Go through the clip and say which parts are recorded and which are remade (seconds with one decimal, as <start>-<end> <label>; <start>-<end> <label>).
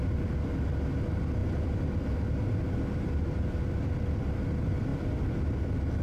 0.0-6.0 recorded